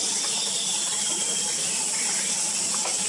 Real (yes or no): yes